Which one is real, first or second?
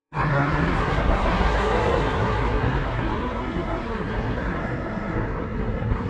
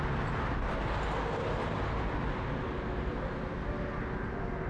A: second